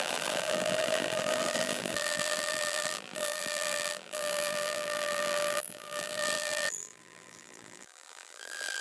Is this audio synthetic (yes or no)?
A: yes